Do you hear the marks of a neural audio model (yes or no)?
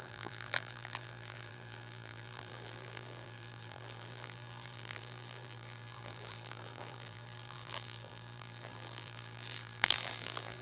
yes